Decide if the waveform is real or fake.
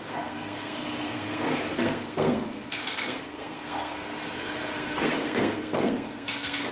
fake